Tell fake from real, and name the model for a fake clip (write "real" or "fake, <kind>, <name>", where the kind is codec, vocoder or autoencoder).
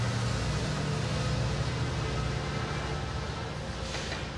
real